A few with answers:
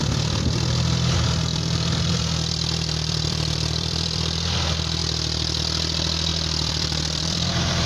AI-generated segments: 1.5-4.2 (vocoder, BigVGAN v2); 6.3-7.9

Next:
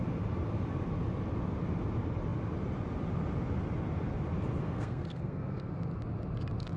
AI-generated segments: 4.6-5.7 (codec, SNAC)

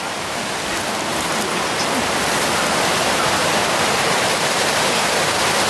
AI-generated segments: none

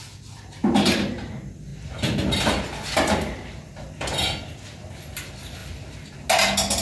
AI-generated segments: none

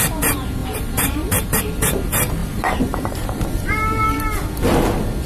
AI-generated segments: 0.6-1.6 (vocoder, BigVGAN v2); 2.4-3.7